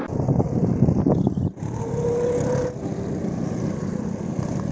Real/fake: real